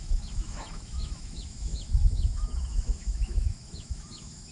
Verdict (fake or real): fake